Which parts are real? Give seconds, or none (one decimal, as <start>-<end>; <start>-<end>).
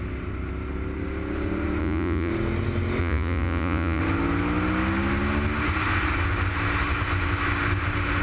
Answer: 0.0-1.8; 2.3-3.0; 4.0-8.2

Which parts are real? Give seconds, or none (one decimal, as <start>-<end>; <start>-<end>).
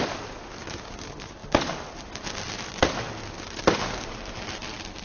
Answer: 0.0-5.0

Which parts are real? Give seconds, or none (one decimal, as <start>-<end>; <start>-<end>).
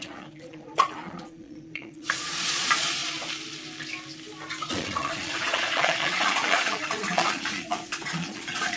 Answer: 3.0-4.6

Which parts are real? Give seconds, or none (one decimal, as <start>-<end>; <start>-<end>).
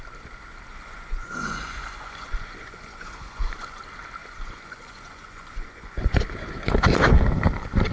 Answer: 0.0-0.7; 3.8-4.2; 6.1-7.9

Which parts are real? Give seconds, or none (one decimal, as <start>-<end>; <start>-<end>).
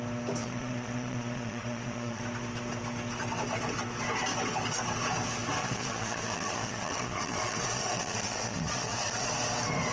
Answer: 0.0-0.4; 2.2-5.6; 9.3-9.9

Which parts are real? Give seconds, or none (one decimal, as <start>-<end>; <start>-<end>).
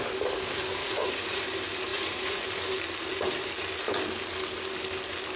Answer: 0.0-0.8; 1.4-1.9; 2.4-5.4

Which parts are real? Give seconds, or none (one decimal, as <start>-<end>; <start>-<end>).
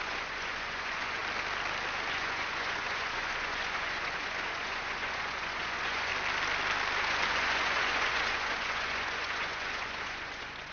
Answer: 1.2-2.1; 6.1-7.0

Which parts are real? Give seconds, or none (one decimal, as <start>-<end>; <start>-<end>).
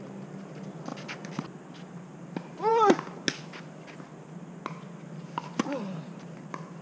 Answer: 0.0-6.8